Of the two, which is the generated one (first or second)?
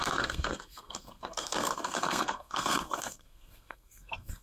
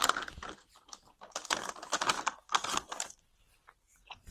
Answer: first